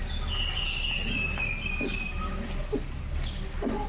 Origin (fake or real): real